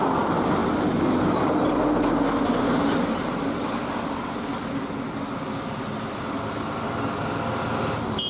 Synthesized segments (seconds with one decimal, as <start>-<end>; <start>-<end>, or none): none